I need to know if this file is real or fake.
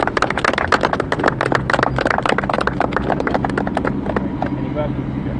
real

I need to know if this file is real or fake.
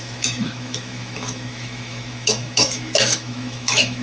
fake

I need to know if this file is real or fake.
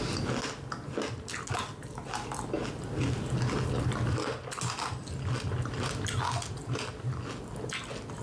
real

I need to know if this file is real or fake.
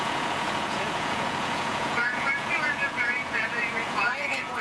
fake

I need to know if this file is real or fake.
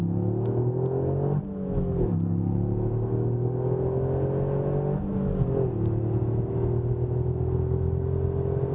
real